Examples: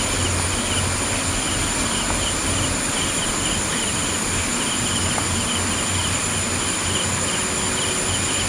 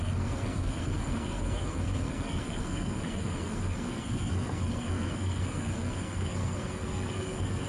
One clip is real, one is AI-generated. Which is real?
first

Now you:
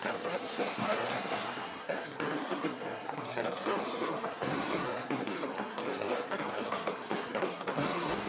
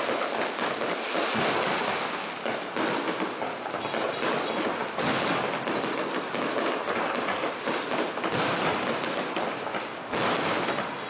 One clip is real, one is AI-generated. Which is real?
second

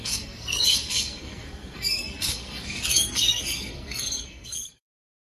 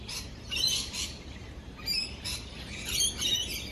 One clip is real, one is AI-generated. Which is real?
second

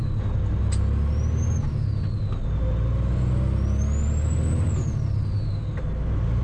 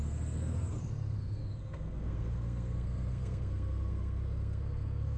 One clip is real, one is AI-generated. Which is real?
first